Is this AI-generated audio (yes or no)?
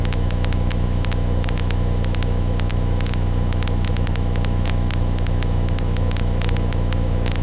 yes